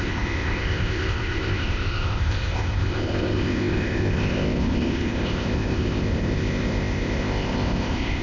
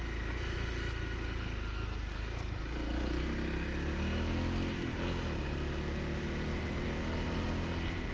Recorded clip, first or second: second